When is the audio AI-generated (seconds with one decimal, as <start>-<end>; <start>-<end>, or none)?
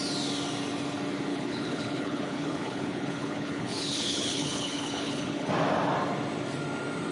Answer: 1.3-5.5